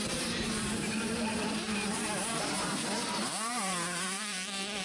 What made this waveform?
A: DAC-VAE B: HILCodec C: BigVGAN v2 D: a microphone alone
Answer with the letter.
C